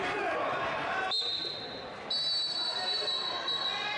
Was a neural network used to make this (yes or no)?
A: no